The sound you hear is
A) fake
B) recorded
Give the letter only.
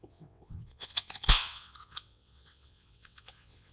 A